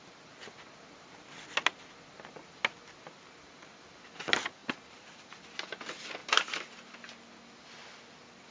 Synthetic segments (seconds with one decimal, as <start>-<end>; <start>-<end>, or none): 4.6-5.3; 6.2-7.0